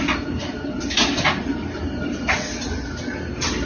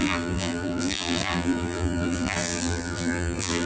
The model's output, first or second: second